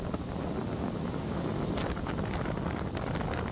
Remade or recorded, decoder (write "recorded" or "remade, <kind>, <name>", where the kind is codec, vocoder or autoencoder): recorded